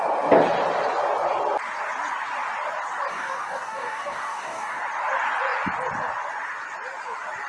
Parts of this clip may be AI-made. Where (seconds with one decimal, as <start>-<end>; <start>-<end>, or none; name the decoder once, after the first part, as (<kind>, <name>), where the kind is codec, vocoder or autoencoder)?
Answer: 3.1-4.8 (codec, DAC)